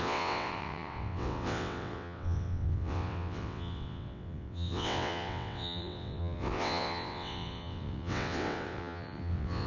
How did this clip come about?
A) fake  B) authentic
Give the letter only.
A